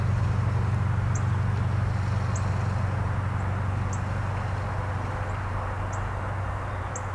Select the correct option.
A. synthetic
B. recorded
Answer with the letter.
B